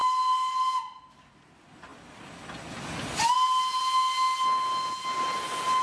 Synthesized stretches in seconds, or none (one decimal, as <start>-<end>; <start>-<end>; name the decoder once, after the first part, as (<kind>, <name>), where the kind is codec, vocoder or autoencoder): none